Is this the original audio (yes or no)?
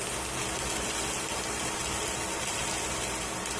yes